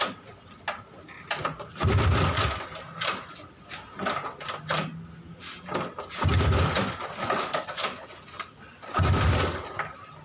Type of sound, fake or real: real